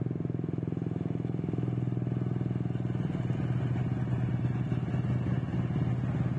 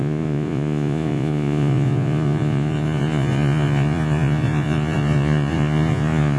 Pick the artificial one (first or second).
second